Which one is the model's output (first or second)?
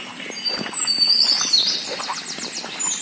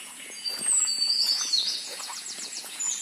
second